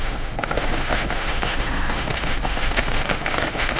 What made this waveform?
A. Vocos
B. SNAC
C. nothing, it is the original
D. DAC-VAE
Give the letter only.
D